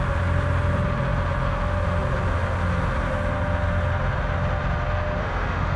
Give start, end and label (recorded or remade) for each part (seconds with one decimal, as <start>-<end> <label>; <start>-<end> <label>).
0.0-5.2 recorded; 5.2-5.8 remade